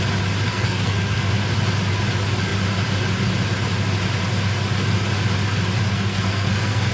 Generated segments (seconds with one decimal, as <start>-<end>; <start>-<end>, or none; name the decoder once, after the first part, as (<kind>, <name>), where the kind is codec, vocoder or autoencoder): 0.5-1.3 (codec, SNAC); 5.9-6.9